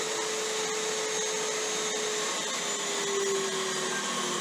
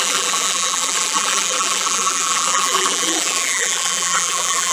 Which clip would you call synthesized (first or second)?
second